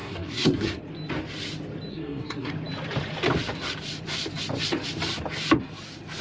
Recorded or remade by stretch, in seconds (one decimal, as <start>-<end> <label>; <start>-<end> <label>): 0.0-0.8 remade; 0.8-1.9 recorded; 1.9-2.5 remade; 2.5-6.2 recorded